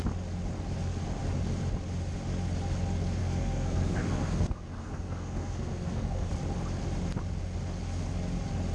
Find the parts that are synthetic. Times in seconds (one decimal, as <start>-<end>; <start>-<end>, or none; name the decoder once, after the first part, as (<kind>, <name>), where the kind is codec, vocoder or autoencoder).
3.2-6.3 (codec, SNAC)